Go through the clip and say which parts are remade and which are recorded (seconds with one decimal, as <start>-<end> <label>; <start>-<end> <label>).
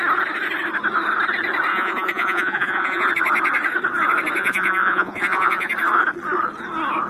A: 0.0-1.7 recorded; 1.7-3.1 remade; 3.1-4.4 recorded; 4.4-5.7 remade; 5.7-7.1 recorded